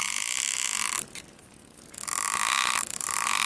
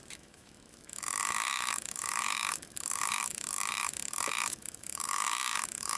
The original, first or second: first